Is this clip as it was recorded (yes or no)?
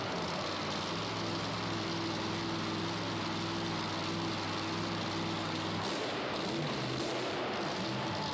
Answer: yes